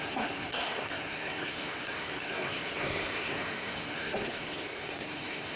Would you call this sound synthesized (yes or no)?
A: yes